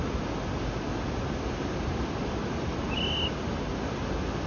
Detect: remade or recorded recorded